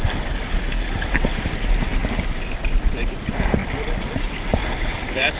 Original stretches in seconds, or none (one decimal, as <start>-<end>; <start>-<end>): 0.0-4.5